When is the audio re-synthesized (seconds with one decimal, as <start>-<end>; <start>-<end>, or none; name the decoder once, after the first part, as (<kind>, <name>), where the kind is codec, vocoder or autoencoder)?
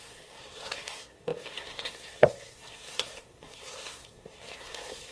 0.0-5.1 (codec, SNAC)